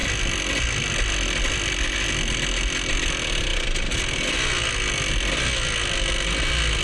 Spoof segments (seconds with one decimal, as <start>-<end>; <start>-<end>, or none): none